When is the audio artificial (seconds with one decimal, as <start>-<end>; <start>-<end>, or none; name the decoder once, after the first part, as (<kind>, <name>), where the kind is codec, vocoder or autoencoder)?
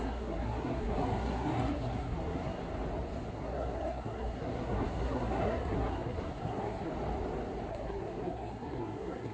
0.0-2.6 (codec, SNAC); 3.3-6.9; 7.7-9.3